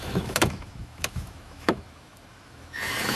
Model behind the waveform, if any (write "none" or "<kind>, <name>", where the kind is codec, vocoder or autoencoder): autoencoder, DAC-VAE